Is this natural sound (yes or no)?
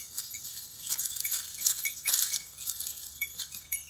no